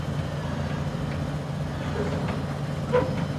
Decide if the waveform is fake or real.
real